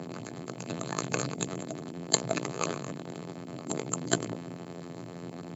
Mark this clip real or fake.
fake